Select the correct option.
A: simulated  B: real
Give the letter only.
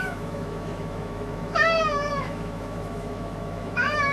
A